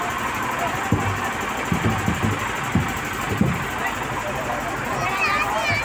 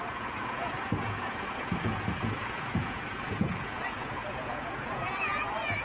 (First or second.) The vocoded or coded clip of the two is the second